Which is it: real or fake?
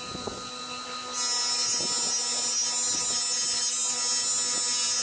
real